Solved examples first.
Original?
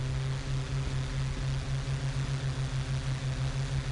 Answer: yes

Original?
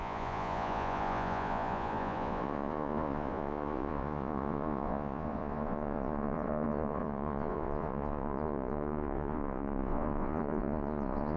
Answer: no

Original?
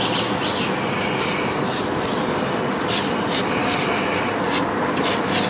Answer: yes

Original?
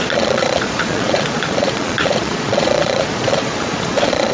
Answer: no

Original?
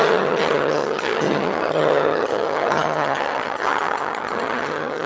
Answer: no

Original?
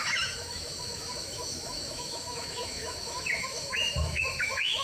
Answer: no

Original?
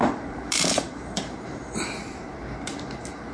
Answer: no